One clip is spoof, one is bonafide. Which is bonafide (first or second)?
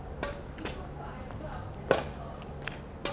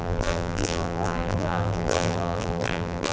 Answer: first